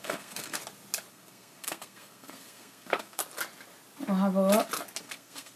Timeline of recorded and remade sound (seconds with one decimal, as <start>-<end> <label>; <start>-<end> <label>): 0.0-0.6 remade; 0.6-1.1 recorded; 1.1-3.2 remade; 3.2-5.0 recorded; 5.0-5.6 remade